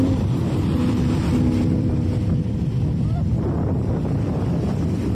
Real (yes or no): no